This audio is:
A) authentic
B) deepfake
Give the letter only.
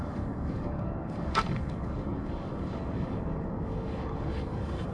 B